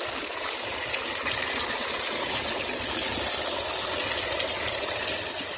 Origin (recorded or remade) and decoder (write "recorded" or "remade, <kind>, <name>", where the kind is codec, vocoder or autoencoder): recorded